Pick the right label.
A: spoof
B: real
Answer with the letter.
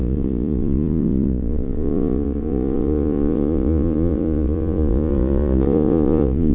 A